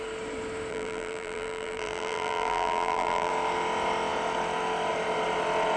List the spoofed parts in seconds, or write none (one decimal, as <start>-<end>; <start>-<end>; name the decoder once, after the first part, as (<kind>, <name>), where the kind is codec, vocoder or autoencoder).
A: 0.7-3.3 (vocoder, BigVGAN v2)